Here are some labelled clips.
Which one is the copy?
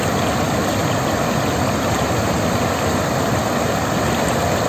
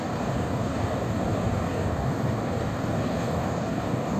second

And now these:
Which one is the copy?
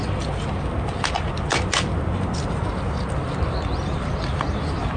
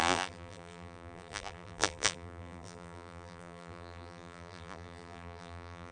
second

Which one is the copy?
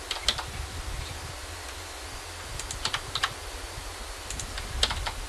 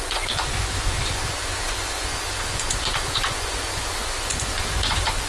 second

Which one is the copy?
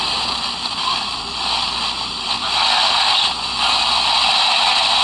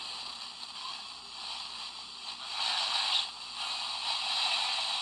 first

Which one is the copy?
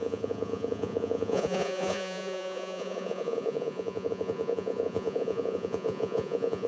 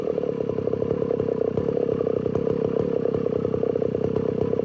first